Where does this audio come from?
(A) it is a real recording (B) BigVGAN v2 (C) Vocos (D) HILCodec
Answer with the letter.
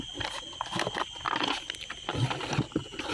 A